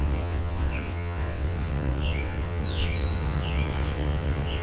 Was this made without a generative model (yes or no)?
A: no